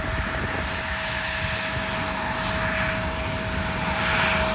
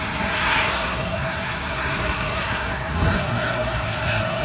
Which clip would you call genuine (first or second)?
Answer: first